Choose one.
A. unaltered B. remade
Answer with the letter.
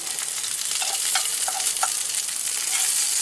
A